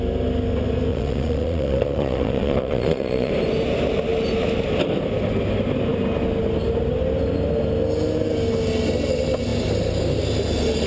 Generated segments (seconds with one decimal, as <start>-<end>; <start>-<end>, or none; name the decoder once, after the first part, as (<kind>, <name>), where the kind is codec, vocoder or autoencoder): 0.9-3.3 (vocoder, Vocos)